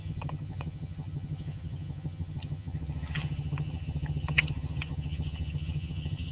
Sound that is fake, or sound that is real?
fake